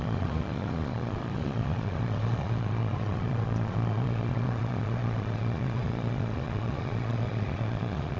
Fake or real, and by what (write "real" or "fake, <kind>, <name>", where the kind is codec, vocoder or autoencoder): fake, vocoder, Vocos